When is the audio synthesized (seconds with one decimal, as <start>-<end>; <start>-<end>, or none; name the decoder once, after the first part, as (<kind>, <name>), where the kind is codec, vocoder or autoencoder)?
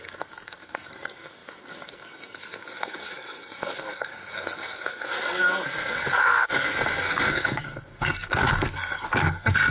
0.0-9.7 (codec, SNAC)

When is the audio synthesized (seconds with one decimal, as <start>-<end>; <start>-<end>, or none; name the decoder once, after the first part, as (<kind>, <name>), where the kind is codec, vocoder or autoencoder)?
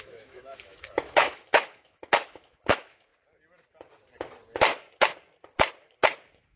0.0-3.1 (autoencoder, DAC-VAE)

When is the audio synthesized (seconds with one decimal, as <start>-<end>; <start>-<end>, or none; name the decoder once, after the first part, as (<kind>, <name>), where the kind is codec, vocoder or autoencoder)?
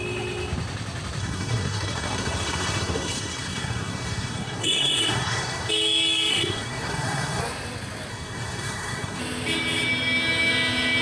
1.2-5.7 (codec, SNAC); 6.3-7.4; 8.1-9.2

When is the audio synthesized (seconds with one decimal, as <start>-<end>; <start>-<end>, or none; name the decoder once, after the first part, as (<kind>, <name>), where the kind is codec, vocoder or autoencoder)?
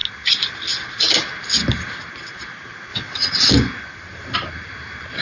2.9-3.5 (vocoder, WaveNeXt)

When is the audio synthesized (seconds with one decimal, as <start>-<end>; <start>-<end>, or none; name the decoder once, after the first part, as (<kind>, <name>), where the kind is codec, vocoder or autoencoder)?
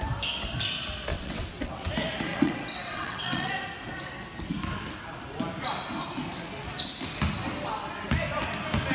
1.1-1.9 (vocoder, WaveNeXt); 2.3-3.5